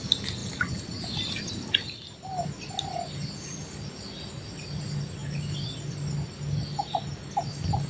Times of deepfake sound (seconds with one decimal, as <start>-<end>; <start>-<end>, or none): none